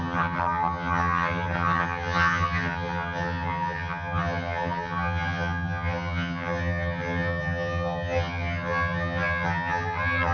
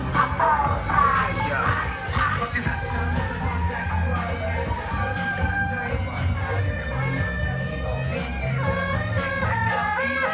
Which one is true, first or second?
second